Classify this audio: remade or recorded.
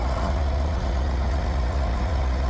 remade